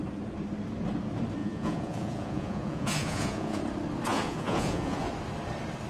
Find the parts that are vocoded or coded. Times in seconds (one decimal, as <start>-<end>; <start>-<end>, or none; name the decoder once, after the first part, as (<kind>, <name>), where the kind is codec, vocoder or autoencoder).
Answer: 1.4-3.6 (vocoder, Vocos); 4.1-5.1